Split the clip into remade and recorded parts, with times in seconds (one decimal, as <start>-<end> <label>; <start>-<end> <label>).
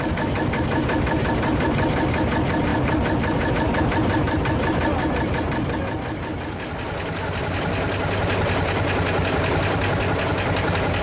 0.0-11.0 recorded